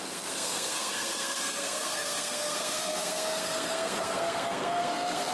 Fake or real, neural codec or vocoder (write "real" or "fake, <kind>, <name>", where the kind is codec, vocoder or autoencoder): fake, codec, SNAC